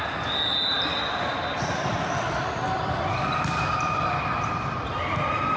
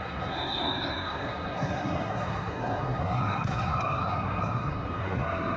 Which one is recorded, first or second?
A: first